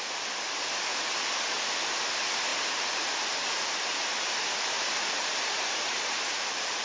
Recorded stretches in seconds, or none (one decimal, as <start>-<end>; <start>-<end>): 0.0-2.5